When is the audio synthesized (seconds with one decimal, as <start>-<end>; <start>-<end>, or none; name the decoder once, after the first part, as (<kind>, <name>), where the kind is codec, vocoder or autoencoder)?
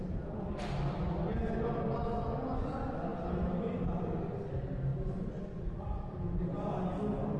none